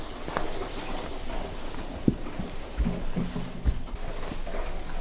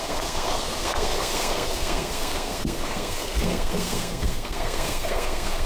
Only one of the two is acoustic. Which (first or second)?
first